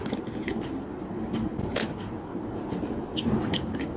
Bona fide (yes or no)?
yes